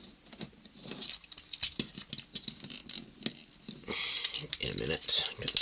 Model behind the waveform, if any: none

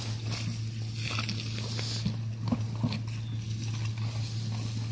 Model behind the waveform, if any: none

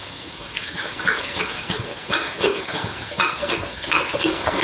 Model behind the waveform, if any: codec, SNAC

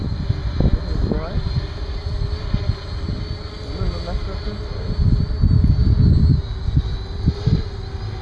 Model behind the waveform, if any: none